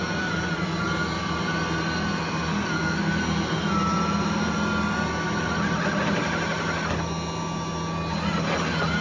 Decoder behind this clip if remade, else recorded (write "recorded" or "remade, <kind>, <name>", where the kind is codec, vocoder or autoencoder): recorded